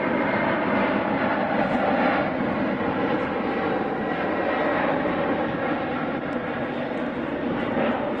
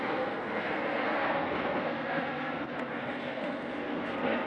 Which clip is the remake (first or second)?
second